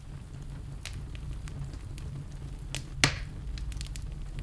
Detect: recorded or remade recorded